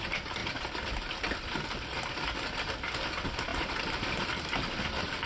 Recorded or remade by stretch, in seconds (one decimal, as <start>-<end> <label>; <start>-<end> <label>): 0.0-3.5 recorded; 3.5-4.1 remade; 4.1-5.3 recorded